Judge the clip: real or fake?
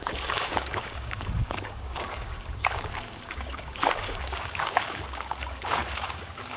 fake